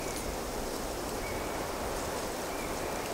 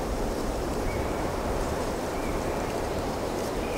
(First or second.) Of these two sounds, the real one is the first